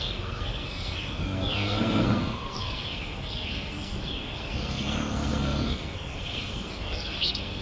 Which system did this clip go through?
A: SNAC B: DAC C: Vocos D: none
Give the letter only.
A